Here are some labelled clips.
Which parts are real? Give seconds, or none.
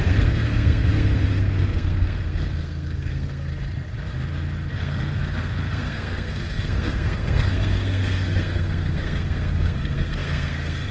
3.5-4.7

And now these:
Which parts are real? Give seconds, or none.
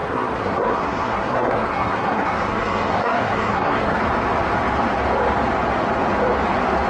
4.0-6.9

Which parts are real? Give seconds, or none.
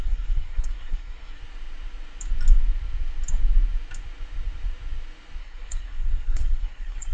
1.4-5.4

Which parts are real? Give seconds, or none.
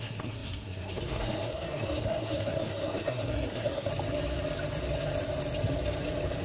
3.9-6.4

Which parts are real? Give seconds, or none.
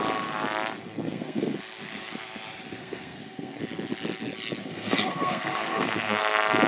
0.0-0.8; 1.6-2.8; 3.6-4.6; 6.2-6.7